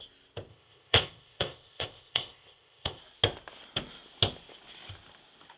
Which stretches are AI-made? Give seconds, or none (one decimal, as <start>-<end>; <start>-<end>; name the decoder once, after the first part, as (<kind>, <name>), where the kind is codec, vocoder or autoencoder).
0.5-3.0 (codec, ZipCodec)